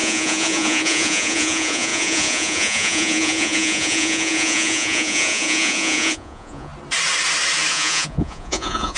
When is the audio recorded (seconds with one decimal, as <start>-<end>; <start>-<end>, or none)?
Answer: 6.7-7.7

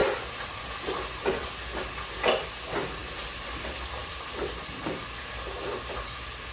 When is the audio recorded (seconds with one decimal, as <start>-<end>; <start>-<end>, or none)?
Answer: 0.6-3.0; 3.6-4.0; 4.8-6.5